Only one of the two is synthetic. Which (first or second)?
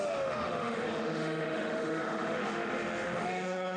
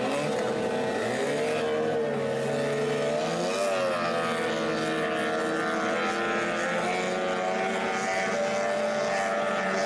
first